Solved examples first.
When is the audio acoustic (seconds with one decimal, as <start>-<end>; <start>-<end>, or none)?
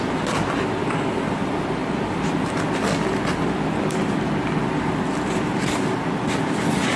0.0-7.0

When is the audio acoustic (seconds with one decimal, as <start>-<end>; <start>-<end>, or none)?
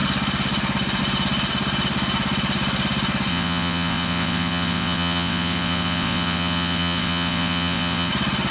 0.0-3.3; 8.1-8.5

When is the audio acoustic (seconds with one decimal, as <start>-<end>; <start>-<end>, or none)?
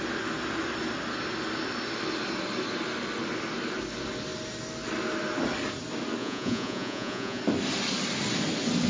0.0-6.2; 7.4-8.9